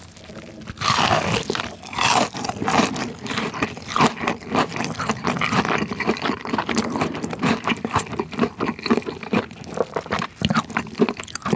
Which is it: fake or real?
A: fake